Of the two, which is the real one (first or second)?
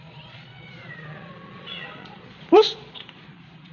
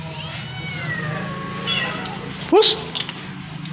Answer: second